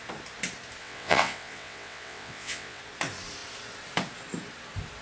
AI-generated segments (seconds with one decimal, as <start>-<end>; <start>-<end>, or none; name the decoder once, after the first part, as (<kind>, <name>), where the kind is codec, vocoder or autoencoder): 0.8-2.8 (vocoder, WaveNeXt)